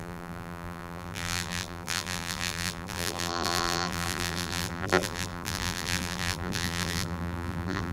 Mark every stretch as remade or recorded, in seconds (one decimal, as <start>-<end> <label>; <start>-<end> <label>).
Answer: 0.0-7.9 remade